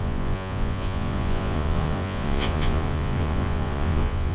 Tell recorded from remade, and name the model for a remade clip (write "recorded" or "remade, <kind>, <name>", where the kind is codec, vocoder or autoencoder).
remade, vocoder, Vocos